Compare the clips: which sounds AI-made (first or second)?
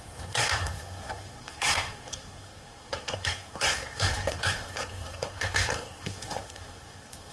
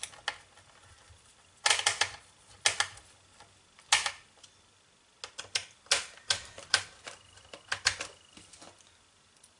first